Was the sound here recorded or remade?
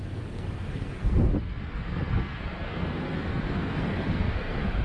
remade